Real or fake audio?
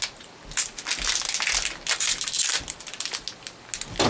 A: real